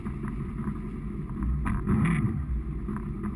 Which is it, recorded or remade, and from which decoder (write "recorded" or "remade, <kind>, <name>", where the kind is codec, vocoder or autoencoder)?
recorded